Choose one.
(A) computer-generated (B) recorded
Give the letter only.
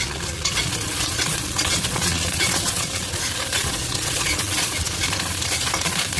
A